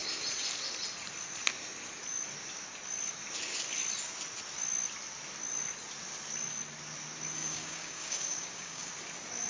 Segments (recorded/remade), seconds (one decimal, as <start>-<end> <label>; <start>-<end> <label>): 0.0-7.4 recorded; 7.4-8.9 remade; 8.9-9.5 recorded